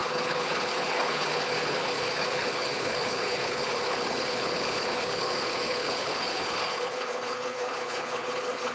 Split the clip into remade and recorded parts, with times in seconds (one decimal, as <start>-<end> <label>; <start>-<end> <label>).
0.0-8.7 remade